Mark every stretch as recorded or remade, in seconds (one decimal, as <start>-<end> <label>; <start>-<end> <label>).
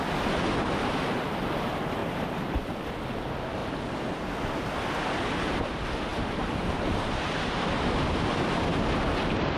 0.0-2.0 recorded; 2.0-2.6 remade; 2.6-3.6 recorded; 3.6-4.3 remade; 4.3-6.1 recorded; 6.1-7.7 remade; 7.7-9.6 recorded